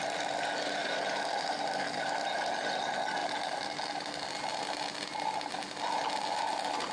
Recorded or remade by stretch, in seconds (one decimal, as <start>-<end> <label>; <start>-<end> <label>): 0.0-0.8 recorded; 0.8-2.2 remade; 2.2-3.2 recorded; 3.2-4.6 remade; 4.6-6.9 recorded